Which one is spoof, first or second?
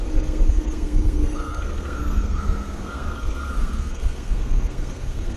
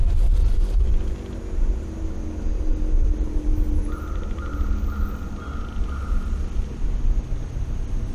first